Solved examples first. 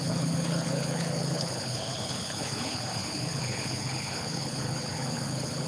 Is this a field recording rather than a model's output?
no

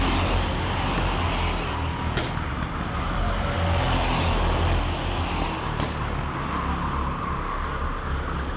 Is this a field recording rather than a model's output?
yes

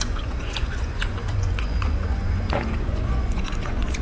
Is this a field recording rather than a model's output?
no